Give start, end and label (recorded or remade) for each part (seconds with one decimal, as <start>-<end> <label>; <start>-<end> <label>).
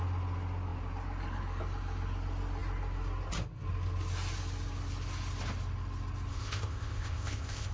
0.0-6.3 recorded; 6.3-7.7 remade